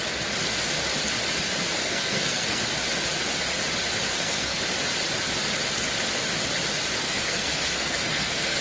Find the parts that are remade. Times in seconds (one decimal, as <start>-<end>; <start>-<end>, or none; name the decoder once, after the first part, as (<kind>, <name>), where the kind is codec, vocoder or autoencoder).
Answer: 1.8-2.6 (codec, SNAC); 4.1-4.6; 7.0-8.6